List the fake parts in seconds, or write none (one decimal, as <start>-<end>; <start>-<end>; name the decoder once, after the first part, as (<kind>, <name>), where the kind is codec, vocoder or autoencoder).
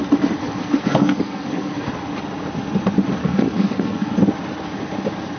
0.4-1.9 (codec, SNAC); 3.2-4.2